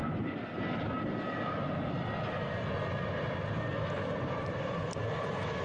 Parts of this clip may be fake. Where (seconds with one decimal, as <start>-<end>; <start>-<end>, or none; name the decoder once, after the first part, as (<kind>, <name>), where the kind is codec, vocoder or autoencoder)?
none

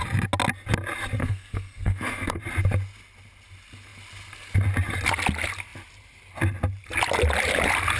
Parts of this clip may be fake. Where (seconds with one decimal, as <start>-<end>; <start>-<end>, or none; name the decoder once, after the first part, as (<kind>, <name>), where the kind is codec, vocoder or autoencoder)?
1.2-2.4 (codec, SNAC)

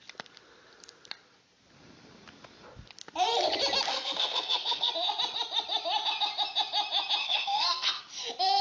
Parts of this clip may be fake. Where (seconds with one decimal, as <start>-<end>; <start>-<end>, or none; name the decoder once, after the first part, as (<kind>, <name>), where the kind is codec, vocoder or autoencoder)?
3.9-4.9 (codec, SNAC); 7.2-8.0

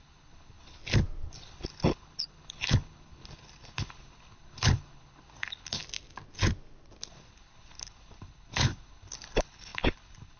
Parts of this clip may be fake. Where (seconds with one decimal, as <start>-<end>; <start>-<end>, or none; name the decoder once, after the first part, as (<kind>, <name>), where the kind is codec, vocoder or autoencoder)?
0.0-0.8 (codec, HILCodec); 1.3-5.8; 7.1-10.4